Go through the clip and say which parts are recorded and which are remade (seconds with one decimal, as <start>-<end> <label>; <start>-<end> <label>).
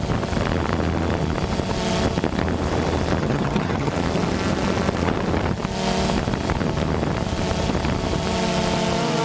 0.0-3.2 recorded; 3.2-3.9 remade; 3.9-9.2 recorded